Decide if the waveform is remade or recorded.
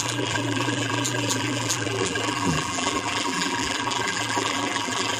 remade